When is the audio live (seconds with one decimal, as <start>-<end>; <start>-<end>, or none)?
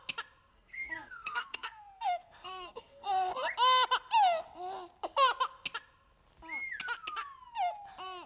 0.0-0.5; 3.3-8.3